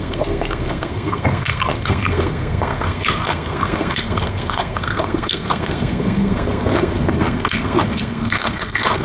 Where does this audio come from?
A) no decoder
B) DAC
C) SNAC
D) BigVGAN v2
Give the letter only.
C